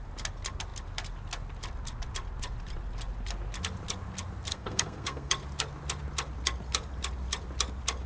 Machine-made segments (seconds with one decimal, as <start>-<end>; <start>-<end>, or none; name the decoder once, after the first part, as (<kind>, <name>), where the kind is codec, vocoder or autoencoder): 4.5-5.3 (codec, SNAC)